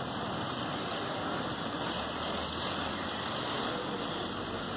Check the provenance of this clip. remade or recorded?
recorded